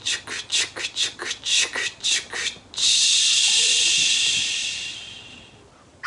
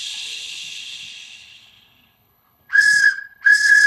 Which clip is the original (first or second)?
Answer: first